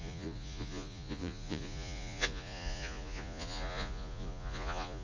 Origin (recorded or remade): remade